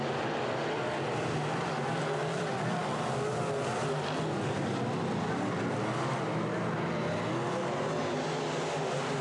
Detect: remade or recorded recorded